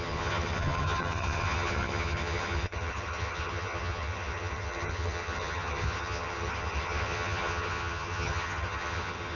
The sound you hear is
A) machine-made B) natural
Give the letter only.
A